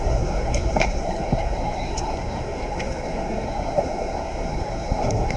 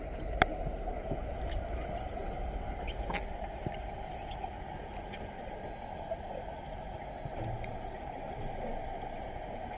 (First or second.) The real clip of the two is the second